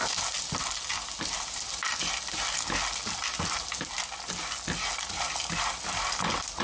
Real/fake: real